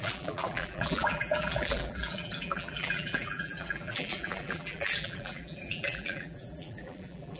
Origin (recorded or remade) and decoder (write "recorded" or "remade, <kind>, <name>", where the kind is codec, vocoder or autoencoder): remade, vocoder, BigVGAN v2